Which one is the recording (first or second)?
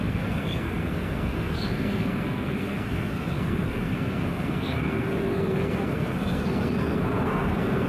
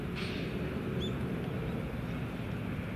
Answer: second